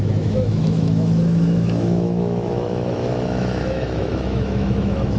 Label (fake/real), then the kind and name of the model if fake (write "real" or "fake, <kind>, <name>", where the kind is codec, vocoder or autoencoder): fake, autoencoder, DAC-VAE